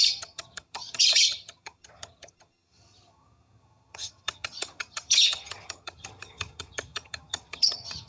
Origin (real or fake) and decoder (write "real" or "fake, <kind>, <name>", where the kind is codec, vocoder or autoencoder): fake, vocoder, HiFi-GAN